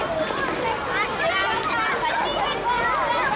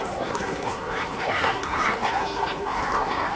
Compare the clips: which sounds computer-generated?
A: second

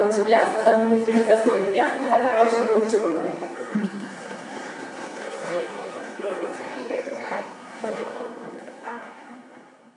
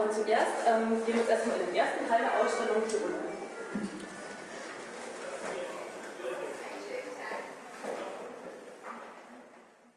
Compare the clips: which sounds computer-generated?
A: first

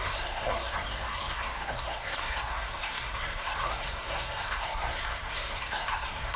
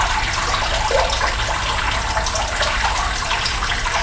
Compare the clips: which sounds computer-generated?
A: first